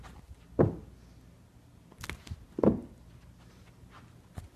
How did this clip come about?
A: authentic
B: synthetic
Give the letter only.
A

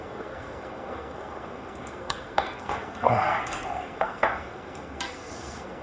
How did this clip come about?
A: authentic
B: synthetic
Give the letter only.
B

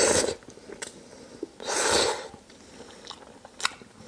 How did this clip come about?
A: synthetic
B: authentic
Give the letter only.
B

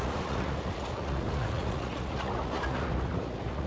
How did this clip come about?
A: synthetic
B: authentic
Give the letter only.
A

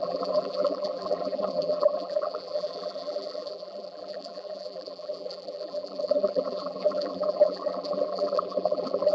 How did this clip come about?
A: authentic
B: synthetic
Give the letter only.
B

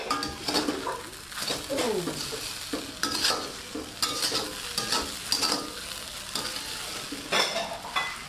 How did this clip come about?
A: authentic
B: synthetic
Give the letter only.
A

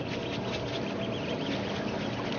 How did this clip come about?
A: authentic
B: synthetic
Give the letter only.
A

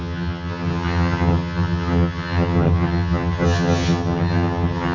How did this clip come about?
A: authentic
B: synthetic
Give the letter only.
B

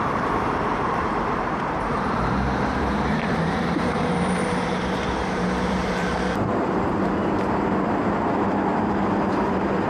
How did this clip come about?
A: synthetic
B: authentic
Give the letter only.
A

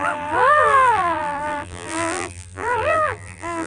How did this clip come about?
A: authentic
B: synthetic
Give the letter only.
B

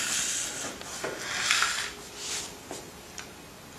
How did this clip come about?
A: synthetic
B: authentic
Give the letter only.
B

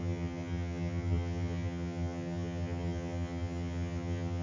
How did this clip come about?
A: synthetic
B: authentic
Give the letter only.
A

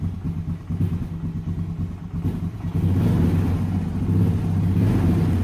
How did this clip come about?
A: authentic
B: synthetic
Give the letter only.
A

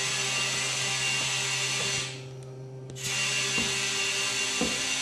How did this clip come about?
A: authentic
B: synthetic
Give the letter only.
A